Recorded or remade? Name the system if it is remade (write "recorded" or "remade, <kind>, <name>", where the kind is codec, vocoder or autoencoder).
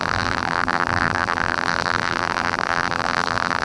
remade, vocoder, BigVGAN v2